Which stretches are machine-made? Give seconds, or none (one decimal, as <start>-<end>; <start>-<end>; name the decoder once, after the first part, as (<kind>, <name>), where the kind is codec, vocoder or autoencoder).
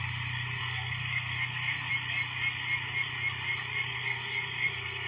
0.6-1.9 (codec, SNAC); 3.9-5.1